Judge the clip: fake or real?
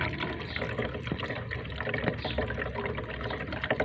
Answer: real